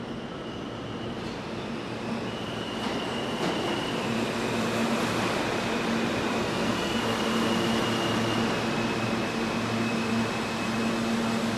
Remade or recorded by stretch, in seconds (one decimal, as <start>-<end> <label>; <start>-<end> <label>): 0.0-6.4 recorded; 6.4-7.0 remade; 7.0-11.6 recorded